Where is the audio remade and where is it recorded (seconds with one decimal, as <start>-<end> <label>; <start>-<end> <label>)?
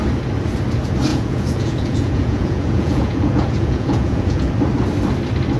0.0-1.1 recorded; 1.1-4.5 remade; 4.5-5.6 recorded